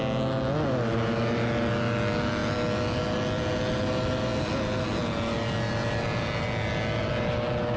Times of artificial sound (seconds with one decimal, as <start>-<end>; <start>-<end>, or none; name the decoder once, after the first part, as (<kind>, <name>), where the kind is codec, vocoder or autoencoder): none